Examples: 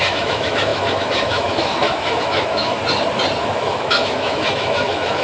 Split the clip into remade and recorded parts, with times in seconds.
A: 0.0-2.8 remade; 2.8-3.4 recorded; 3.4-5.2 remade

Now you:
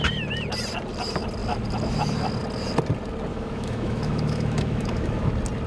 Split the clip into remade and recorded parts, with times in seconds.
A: 0.0-3.3 recorded; 3.3-5.3 remade; 5.3-5.7 recorded

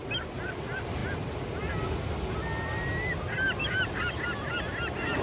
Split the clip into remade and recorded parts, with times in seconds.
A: 0.0-5.2 recorded

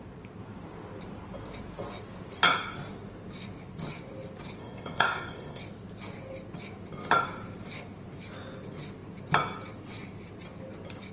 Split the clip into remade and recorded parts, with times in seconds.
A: 0.0-4.6 recorded; 4.6-5.6 remade; 5.6-11.1 recorded